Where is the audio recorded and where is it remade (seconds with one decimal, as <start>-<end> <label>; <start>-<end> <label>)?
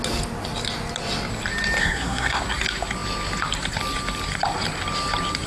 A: 0.0-1.8 recorded; 1.8-2.4 remade; 2.4-5.5 recorded